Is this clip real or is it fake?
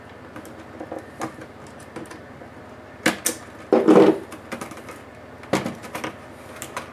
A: real